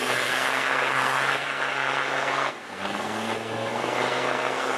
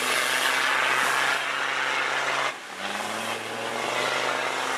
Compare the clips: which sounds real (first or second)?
second